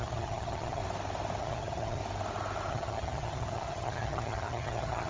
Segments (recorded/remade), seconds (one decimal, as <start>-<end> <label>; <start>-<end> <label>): 0.0-0.8 remade; 0.8-1.4 recorded; 1.4-2.0 remade; 2.0-2.7 recorded; 2.7-5.1 remade